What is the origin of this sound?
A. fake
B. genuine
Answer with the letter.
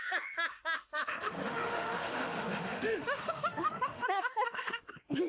A